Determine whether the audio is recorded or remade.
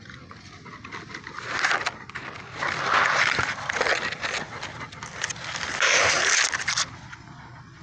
recorded